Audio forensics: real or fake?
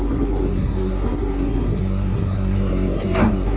fake